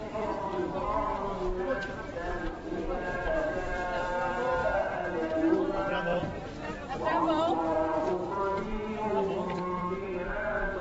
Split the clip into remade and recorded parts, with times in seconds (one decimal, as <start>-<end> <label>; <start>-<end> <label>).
0.0-0.6 remade; 0.6-1.6 recorded; 1.6-4.6 remade; 4.6-5.3 recorded; 5.3-10.8 remade